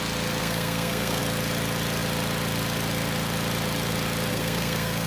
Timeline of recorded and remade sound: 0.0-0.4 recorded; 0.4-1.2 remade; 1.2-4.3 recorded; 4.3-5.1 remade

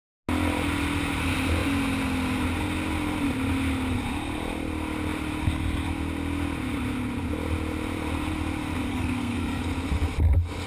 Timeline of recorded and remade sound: 0.0-8.9 recorded; 8.9-9.6 remade; 9.6-10.7 recorded

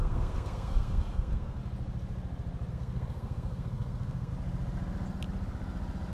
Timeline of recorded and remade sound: 0.0-1.6 remade; 1.6-2.7 recorded; 2.7-4.3 remade; 4.3-6.1 recorded

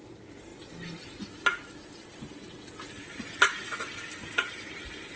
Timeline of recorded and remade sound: 0.0-5.2 recorded

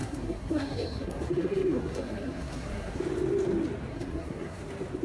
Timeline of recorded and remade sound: 0.0-3.0 remade; 3.0-3.9 recorded; 3.9-4.6 remade; 4.6-5.0 recorded

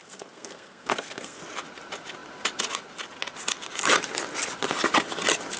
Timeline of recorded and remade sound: 0.0-1.4 remade; 1.4-5.6 recorded

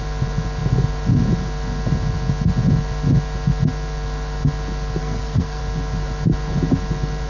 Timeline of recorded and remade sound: 0.0-5.0 recorded; 5.0-5.6 remade; 5.6-7.3 recorded

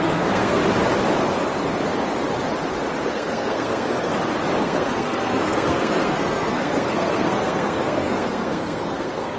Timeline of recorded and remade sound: 0.0-0.6 remade; 0.6-3.1 recorded; 3.1-4.1 remade; 4.1-4.6 recorded; 4.6-9.4 remade